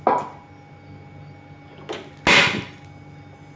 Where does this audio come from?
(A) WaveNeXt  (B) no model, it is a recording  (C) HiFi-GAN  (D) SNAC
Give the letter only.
B